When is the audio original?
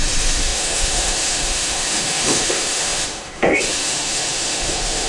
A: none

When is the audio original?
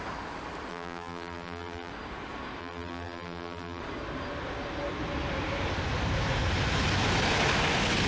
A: 0.0-0.7; 1.9-2.6; 3.8-8.1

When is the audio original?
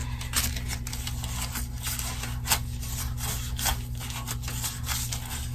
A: 0.0-5.5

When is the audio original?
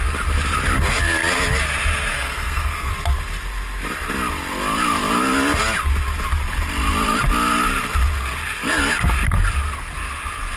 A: 0.0-2.1; 2.9-10.6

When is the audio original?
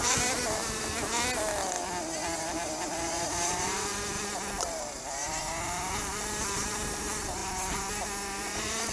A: 0.9-2.4; 3.9-4.6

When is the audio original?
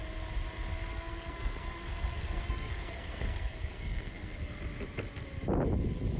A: 0.0-0.9; 4.6-6.2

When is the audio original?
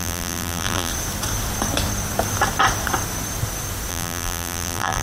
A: 0.9-3.9